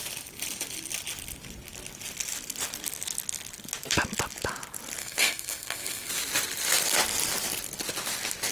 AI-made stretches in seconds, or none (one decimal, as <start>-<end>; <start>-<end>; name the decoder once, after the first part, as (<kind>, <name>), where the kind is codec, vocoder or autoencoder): 5.0-6.1 (codec, SNAC)